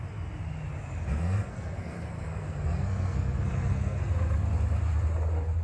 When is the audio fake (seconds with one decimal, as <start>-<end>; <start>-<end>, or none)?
1.1-4.0